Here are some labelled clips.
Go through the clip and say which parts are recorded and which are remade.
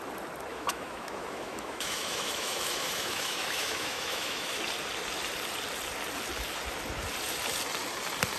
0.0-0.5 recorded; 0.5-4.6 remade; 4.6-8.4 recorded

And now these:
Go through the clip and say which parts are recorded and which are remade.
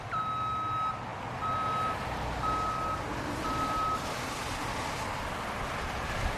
0.0-6.4 recorded